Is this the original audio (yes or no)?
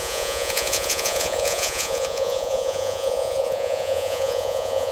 no